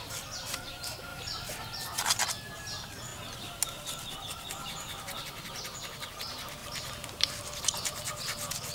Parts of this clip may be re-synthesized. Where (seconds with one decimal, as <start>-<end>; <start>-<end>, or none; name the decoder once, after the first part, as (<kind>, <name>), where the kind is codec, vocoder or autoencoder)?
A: 1.1-2.2 (vocoder, BigVGAN v2); 6.6-7.6